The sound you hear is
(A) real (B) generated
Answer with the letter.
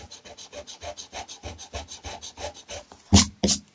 A